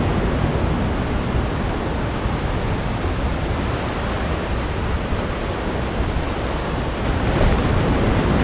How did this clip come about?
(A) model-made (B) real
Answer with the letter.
B